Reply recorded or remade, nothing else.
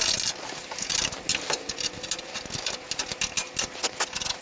recorded